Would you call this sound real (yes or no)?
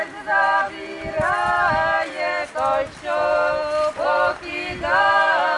yes